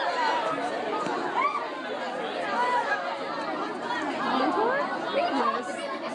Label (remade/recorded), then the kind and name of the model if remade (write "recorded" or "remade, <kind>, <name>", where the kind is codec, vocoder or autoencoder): recorded